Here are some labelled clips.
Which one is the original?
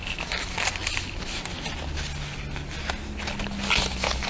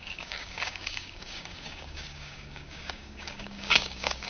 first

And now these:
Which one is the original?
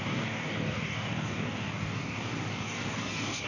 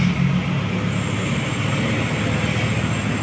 second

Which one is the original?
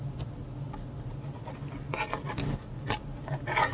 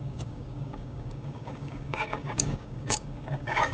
first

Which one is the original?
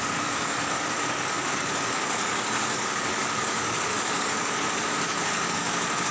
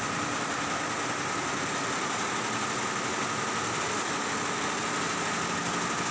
second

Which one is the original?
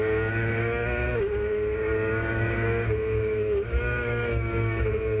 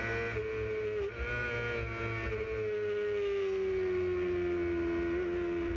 second